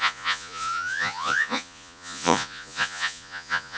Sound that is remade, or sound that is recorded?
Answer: remade